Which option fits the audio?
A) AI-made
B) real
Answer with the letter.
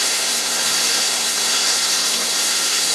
A